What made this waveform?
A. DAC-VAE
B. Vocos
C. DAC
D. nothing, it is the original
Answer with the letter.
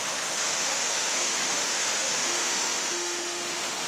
A